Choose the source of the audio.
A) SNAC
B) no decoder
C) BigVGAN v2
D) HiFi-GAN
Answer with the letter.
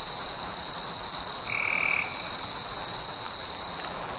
C